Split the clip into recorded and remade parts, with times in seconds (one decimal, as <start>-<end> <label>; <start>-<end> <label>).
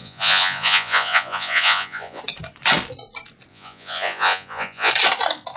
0.0-2.2 remade; 2.2-3.5 recorded; 3.5-4.9 remade; 4.9-5.6 recorded